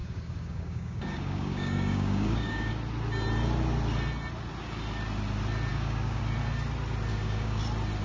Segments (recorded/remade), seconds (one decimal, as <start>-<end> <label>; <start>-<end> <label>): 0.0-2.7 remade; 2.7-5.7 recorded; 5.7-6.2 remade; 6.2-7.1 recorded; 7.1-7.6 remade; 7.6-8.0 recorded